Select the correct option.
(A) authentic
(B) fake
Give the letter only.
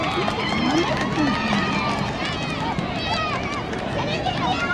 A